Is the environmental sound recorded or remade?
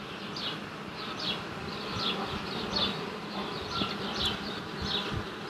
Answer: recorded